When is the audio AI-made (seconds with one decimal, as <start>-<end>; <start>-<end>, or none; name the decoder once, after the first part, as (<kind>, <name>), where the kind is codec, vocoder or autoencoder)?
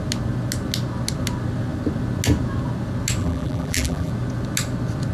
3.2-4.1 (vocoder, BigVGAN v2)